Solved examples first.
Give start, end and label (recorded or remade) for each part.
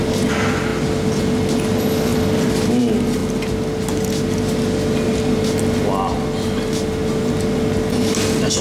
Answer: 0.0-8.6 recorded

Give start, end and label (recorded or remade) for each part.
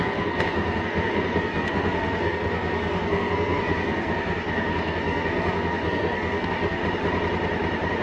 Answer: 0.0-6.8 remade; 6.8-8.0 recorded